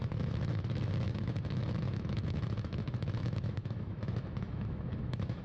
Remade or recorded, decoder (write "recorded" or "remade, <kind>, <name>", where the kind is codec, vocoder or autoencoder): remade, autoencoder, DAC-VAE